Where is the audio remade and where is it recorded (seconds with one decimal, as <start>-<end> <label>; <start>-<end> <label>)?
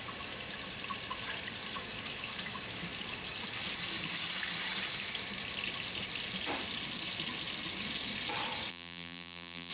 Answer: 0.0-8.7 recorded; 8.7-9.7 remade